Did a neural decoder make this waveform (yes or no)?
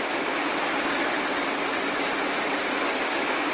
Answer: no